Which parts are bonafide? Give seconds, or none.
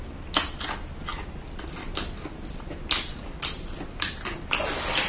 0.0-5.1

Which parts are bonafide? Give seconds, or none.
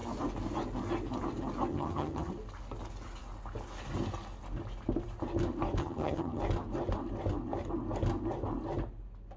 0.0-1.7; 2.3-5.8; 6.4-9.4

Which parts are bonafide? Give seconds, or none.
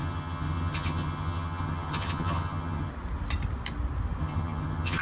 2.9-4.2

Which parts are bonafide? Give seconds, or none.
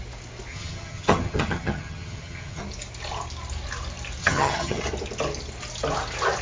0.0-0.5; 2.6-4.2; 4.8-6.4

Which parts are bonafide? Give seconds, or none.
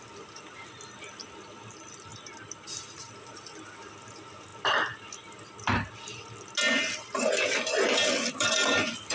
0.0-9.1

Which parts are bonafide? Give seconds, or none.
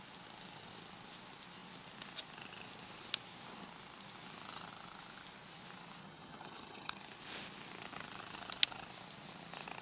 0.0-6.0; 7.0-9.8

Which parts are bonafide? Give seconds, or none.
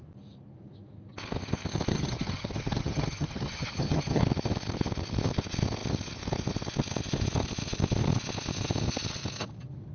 0.0-1.9; 4.2-9.9